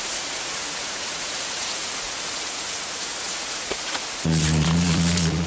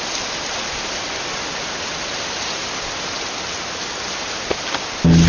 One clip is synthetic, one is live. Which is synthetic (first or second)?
first